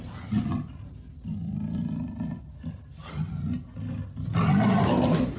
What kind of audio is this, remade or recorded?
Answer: recorded